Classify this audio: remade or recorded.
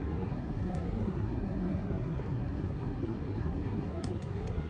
remade